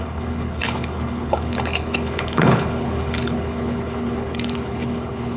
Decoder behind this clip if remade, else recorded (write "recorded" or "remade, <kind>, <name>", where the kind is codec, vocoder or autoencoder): remade, codec, HILCodec